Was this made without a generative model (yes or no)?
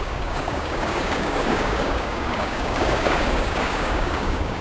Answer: no